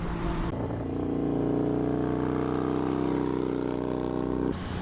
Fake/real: real